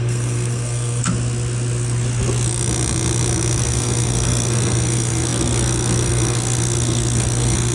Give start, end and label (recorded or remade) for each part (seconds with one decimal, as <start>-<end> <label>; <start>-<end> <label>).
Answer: 0.0-1.0 remade; 1.0-3.6 recorded; 3.6-7.7 remade